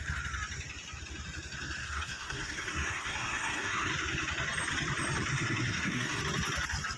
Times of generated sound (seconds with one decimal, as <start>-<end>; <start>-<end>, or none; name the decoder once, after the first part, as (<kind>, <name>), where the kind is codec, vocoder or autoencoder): 1.8-3.9 (codec, SNAC); 5.3-6.2

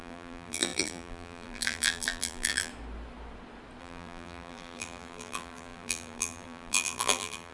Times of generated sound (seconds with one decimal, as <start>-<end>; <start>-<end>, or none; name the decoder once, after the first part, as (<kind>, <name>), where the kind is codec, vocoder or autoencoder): 0.0-2.7 (vocoder, BigVGAN v2); 3.8-7.5

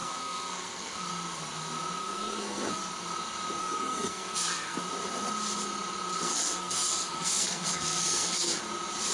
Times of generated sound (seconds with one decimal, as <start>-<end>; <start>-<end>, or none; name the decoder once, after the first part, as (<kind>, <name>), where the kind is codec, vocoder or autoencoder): 0.0-1.1 (codec, SNAC); 2.0-2.9; 3.6-4.8; 6.1-8.6

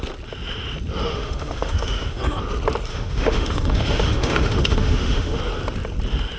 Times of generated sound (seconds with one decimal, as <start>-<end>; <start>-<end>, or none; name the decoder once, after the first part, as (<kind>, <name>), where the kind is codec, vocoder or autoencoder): 1.0-2.4 (autoencoder, DAC-VAE); 2.9-5.4